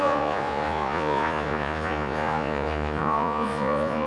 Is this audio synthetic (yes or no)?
yes